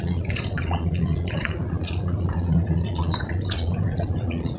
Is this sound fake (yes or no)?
yes